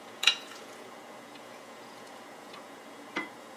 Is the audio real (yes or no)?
no